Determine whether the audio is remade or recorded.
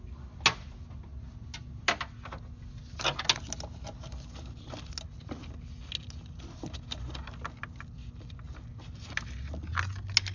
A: recorded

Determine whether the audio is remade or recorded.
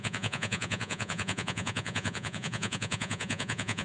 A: remade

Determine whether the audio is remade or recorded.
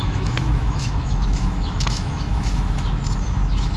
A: remade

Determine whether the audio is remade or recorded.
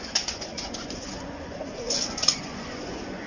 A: remade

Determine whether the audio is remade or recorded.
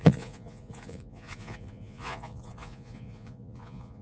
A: remade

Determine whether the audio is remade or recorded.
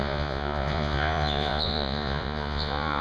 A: remade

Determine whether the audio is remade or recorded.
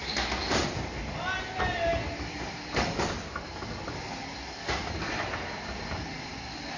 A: recorded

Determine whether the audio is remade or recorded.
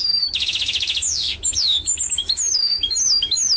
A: remade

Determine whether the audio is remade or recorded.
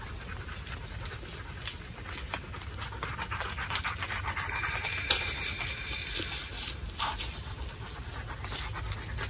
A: recorded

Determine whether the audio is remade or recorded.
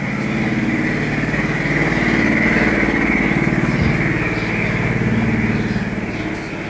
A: recorded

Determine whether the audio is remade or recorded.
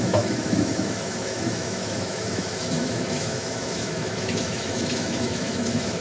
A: remade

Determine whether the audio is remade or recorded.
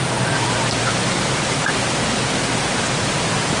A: remade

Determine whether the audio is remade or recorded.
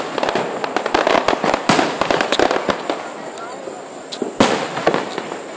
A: recorded